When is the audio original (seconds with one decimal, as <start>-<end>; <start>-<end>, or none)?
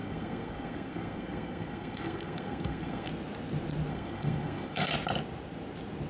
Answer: 3.1-3.9; 4.9-6.1